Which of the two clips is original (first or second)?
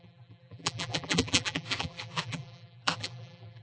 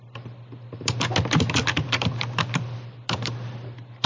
second